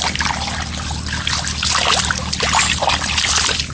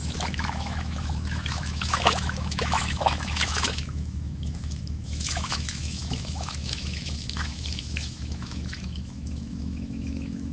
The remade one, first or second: second